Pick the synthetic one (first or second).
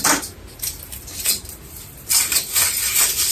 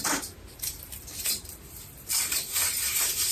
second